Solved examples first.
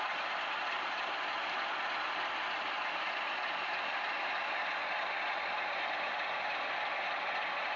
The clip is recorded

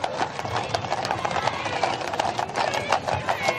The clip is recorded